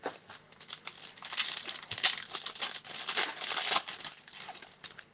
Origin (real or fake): real